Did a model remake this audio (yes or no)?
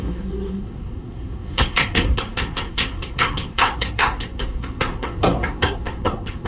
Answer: yes